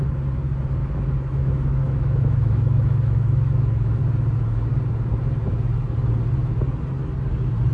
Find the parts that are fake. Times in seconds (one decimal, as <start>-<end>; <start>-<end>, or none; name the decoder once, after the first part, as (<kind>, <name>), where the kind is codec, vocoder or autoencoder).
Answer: 0.8-4.0 (autoencoder, DAC-VAE)